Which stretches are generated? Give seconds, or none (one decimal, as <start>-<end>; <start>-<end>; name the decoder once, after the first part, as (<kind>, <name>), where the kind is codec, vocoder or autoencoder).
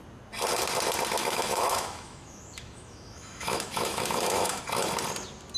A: 1.2-4.6 (autoencoder, DAC-VAE)